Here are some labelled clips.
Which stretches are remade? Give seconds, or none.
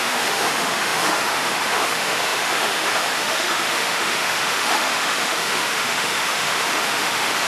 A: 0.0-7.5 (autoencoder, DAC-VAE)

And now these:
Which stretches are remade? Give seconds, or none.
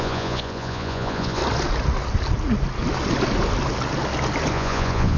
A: 0.0-1.4 (vocoder, Vocos); 4.5-5.2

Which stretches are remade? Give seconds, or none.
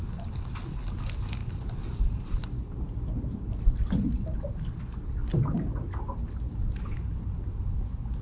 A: 1.4-2.4 (vocoder, BigVGAN v2)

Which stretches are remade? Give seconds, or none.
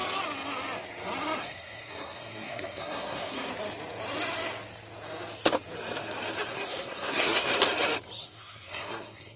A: 1.4-3.5 (codec, SNAC); 6.5-7.5; 8.2-9.4